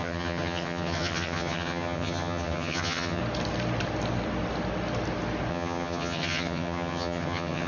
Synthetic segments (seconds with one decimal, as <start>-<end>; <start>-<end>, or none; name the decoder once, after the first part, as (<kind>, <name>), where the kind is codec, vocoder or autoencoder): 0.0-3.2 (vocoder, HiFi-GAN); 5.5-7.7